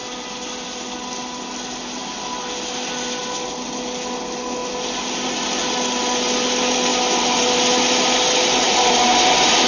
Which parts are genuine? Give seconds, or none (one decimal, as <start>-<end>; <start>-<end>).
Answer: 0.8-4.6; 5.5-9.7